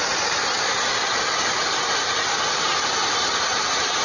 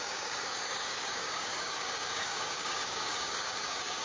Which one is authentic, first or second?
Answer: first